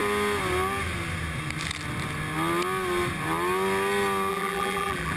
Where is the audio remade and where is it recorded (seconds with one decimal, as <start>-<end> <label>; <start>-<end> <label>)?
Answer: 0.0-4.3 recorded; 4.3-5.2 remade

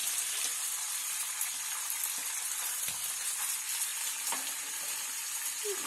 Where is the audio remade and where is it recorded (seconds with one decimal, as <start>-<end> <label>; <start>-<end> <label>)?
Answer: 0.0-3.5 remade; 3.5-5.9 recorded

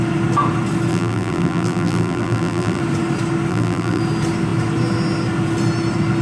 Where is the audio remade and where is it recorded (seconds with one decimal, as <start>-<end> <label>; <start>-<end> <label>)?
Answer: 0.0-0.9 recorded; 0.9-2.8 remade; 2.8-3.5 recorded; 3.5-4.0 remade; 4.0-6.2 recorded

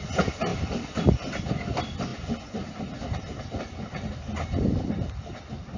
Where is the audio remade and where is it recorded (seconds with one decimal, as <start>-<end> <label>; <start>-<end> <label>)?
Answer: 0.0-5.8 recorded

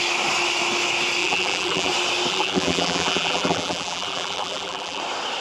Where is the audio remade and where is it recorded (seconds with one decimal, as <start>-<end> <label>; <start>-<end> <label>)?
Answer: 0.0-1.2 recorded; 1.2-1.9 remade; 1.9-2.3 recorded; 2.3-5.0 remade; 5.0-5.4 recorded